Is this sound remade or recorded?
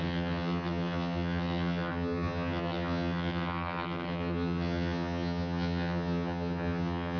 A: remade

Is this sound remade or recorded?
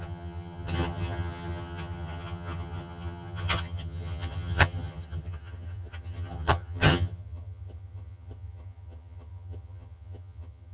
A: remade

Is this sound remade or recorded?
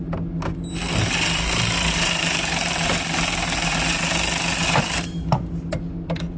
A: recorded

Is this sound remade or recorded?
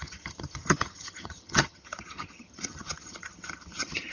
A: remade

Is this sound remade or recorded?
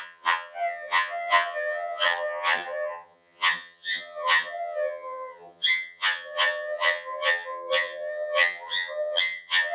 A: remade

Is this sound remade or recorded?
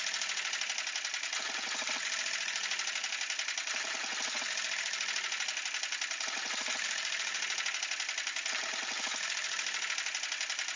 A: recorded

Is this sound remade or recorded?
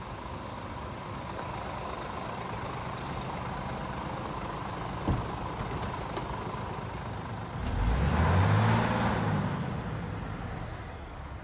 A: recorded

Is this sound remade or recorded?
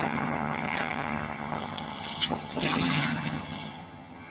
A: remade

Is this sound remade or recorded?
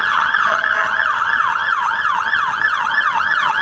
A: remade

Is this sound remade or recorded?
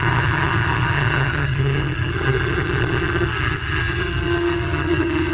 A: remade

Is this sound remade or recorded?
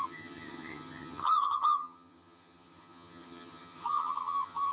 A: remade